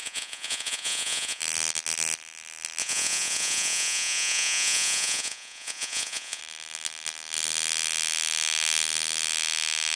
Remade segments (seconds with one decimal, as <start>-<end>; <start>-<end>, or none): 0.0-1.4; 2.8-6.4